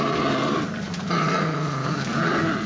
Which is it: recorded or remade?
recorded